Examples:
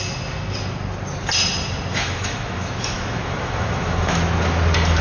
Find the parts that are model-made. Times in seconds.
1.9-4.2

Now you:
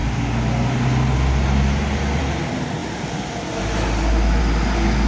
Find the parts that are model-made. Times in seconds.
none

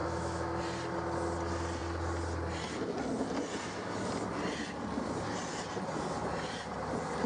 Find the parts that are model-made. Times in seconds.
0.0-0.6

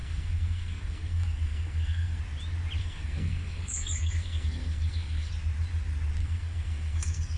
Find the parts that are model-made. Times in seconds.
0.0-2.2; 2.8-5.3; 6.2-7.4